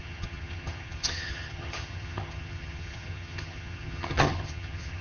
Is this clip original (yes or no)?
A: no